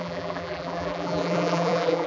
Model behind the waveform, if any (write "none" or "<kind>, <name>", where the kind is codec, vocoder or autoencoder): vocoder, BigVGAN v2